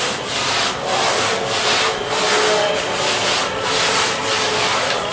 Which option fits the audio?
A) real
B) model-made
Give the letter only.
A